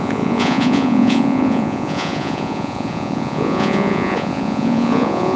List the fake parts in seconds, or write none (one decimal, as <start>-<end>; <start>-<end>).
0.0-5.4